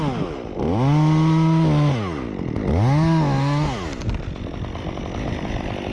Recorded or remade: recorded